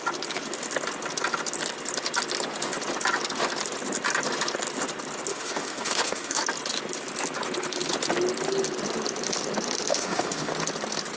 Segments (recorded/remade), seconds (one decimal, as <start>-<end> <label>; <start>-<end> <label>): 0.0-5.3 recorded; 5.3-6.4 remade; 6.4-9.9 recorded; 9.9-10.5 remade; 10.5-11.2 recorded